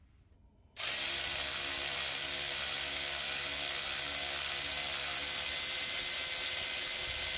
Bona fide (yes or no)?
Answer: yes